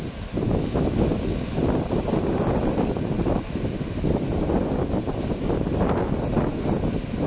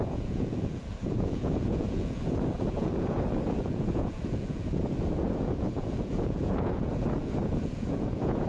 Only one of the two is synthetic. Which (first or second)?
second